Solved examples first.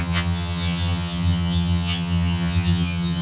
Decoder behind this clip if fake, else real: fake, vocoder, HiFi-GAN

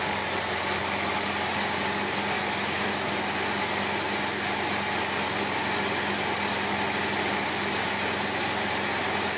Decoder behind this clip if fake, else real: real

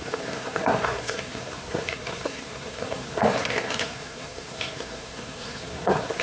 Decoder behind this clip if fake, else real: fake, codec, SNAC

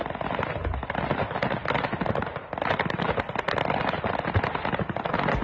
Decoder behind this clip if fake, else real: real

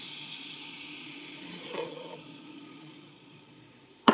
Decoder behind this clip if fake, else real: fake, vocoder, Vocos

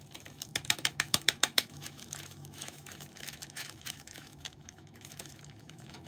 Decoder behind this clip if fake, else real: fake, autoencoder, DAC-VAE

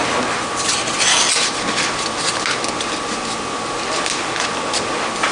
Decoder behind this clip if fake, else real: real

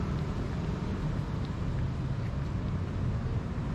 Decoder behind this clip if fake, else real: real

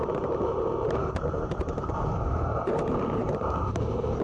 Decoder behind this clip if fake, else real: fake, vocoder, BigVGAN v2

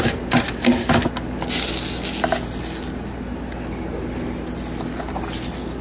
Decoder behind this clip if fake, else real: real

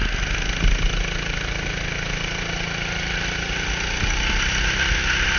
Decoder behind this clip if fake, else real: real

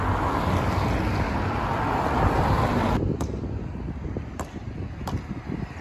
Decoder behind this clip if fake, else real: real